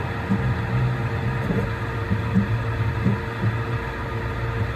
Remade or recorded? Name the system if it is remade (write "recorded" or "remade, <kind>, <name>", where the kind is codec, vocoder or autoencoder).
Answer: recorded